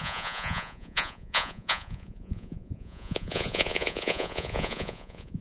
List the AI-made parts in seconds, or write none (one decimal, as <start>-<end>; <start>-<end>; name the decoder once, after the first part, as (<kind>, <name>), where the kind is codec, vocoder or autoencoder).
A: 0.0-5.4 (vocoder, Vocos)